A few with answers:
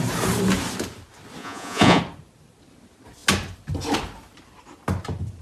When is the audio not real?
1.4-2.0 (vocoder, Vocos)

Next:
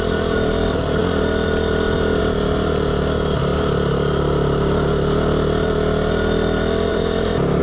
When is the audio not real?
6.9-7.6 (vocoder, BigVGAN v2)

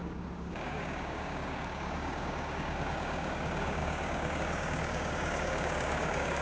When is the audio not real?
0.0-6.4 (codec, DAC)